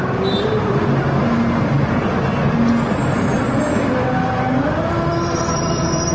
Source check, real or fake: real